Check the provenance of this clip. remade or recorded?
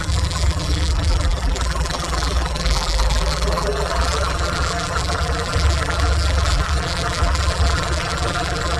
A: remade